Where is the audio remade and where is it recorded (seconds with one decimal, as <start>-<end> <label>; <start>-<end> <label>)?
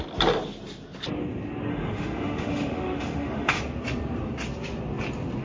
0.0-1.7 recorded; 1.7-3.6 remade; 3.6-5.4 recorded